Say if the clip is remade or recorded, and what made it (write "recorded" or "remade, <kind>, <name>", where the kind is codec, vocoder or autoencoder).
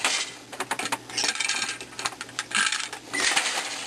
recorded